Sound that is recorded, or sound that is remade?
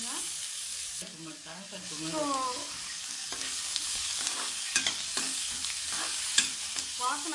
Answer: remade